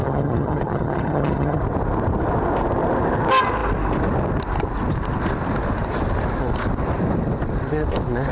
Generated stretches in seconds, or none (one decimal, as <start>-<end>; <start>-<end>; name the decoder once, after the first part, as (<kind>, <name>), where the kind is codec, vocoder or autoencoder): 0.0-1.6 (vocoder, HiFi-GAN)